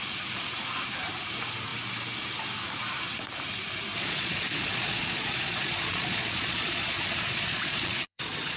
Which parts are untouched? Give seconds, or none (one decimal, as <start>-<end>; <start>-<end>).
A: 0.0-3.9